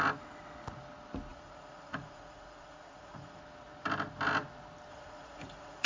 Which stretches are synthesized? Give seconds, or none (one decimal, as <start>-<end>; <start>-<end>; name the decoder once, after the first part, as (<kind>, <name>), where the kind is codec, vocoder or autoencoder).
1.3-3.4 (vocoder, Vocos); 4.9-5.9